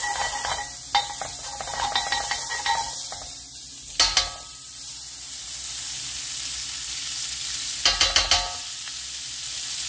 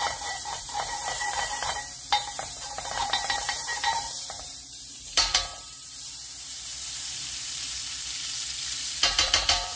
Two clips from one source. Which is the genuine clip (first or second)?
first